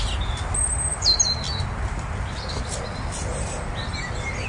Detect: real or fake real